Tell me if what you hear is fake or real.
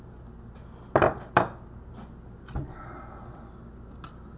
real